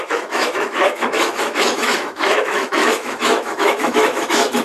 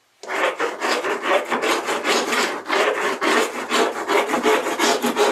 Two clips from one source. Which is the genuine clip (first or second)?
second